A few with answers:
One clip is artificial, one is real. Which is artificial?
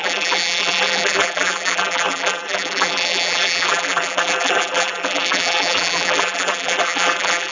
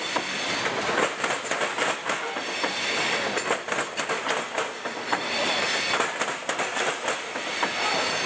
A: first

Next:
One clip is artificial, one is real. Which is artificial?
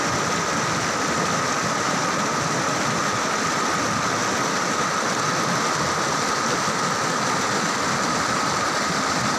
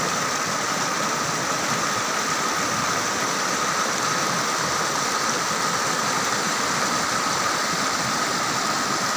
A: second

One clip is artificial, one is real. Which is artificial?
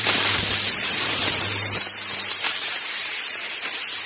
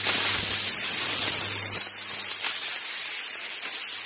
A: first